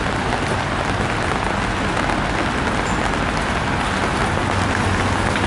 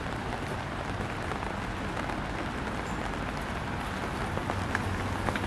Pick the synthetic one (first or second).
second